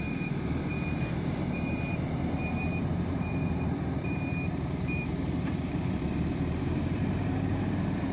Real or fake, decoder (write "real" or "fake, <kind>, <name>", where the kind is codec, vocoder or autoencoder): fake, vocoder, BigVGAN v2